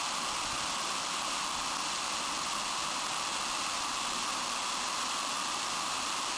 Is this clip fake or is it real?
real